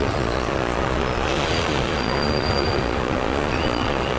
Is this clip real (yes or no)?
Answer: no